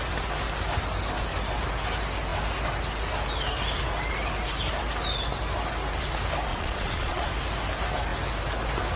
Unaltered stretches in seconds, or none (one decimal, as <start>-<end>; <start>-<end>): 0.0-6.5; 7.3-9.0